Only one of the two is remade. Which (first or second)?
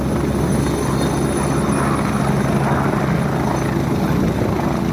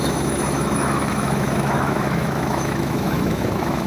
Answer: second